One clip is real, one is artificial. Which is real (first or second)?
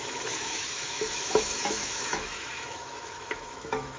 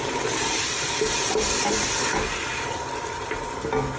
second